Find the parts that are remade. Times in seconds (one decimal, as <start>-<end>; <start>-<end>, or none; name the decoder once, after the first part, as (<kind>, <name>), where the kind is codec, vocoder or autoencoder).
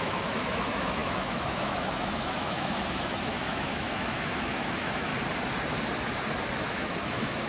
0.0-5.1 (autoencoder, DAC-VAE); 6.6-7.5